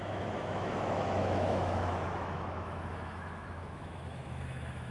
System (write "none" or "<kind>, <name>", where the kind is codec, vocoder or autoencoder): autoencoder, DAC-VAE